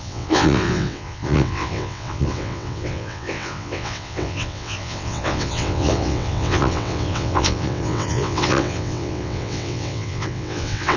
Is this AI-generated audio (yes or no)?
yes